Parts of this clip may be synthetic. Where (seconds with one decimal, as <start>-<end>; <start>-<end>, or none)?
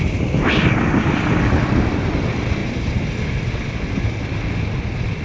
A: 2.6-3.1